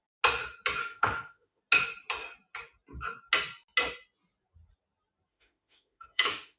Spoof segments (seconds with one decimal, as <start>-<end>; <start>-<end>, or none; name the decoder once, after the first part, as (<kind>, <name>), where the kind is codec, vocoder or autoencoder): 0.8-1.6 (autoencoder, DAC-VAE); 5.3-6.6